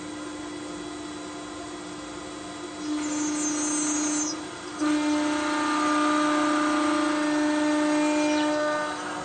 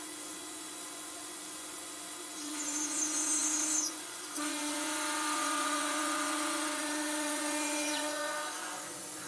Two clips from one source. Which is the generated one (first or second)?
second